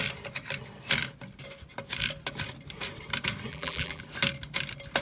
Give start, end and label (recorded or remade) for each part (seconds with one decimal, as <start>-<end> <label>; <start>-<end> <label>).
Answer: 0.0-3.5 recorded; 3.5-4.0 remade; 4.0-5.0 recorded